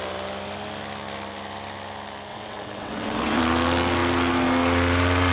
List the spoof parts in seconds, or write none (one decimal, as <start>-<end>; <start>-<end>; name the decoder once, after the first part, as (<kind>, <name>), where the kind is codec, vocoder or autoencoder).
2.3-3.4 (vocoder, WaveNeXt)